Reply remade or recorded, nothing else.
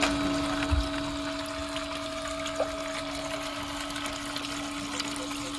recorded